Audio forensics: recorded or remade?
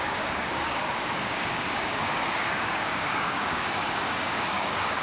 remade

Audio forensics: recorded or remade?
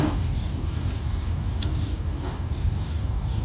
remade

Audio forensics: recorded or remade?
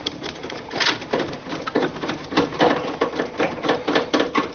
recorded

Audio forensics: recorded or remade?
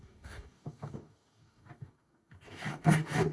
remade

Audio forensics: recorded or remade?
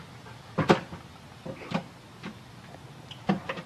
recorded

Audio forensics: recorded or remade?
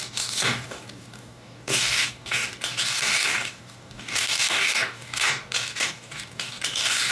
remade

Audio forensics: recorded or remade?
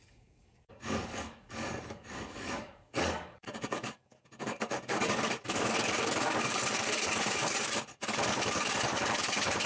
remade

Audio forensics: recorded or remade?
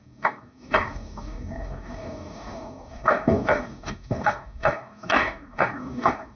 remade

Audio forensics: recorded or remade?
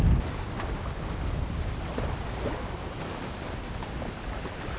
recorded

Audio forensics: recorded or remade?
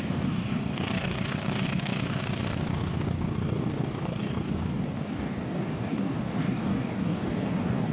remade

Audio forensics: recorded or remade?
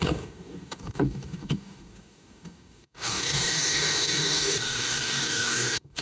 remade